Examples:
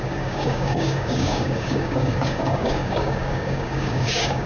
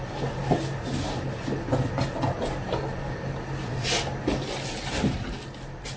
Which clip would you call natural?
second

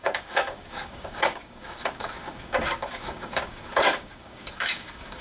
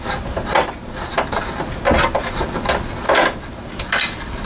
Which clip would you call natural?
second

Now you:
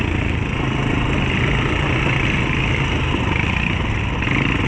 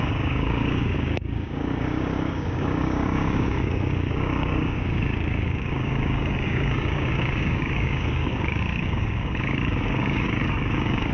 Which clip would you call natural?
first